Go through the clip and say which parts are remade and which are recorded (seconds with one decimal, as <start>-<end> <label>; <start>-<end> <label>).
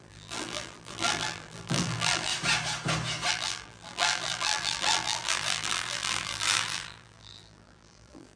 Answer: 0.0-2.3 remade; 2.3-3.3 recorded; 3.3-8.4 remade